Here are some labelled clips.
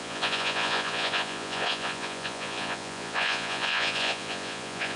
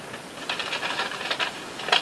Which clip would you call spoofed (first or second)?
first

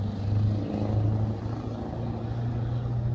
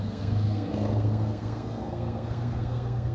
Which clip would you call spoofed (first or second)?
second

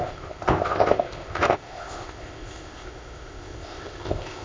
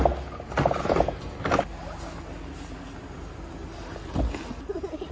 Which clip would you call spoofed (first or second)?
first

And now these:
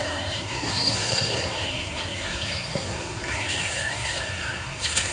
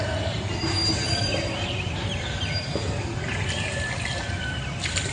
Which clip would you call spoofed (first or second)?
first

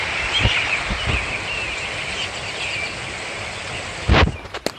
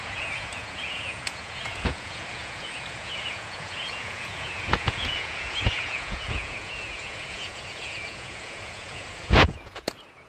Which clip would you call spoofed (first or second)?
second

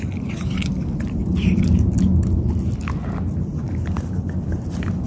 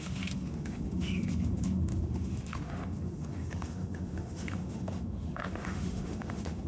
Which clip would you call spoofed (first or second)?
second